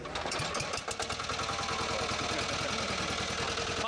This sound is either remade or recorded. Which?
recorded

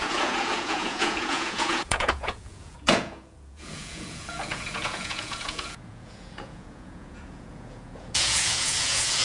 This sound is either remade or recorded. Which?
remade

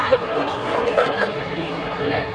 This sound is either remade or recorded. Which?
remade